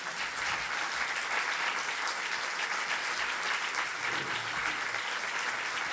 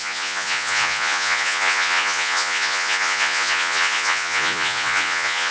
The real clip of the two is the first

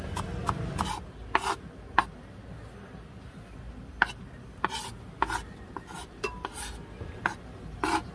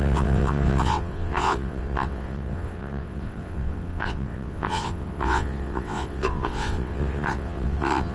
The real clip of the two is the first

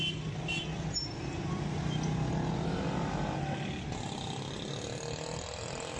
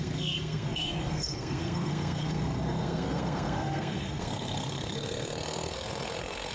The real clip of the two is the first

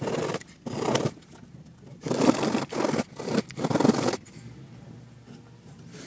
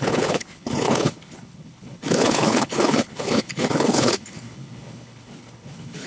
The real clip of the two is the first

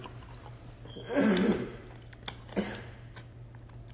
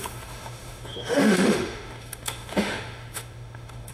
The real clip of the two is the first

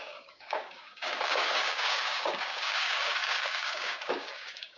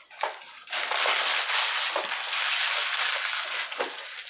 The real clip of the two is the second